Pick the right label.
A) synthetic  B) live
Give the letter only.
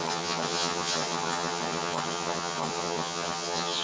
A